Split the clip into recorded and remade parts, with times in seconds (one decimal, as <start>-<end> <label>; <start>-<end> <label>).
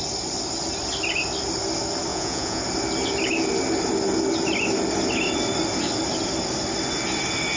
0.0-2.1 recorded; 2.1-2.6 remade; 2.6-7.6 recorded